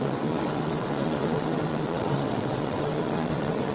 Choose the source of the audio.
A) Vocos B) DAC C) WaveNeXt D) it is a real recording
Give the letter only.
C